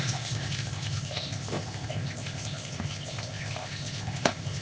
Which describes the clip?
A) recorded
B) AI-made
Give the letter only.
B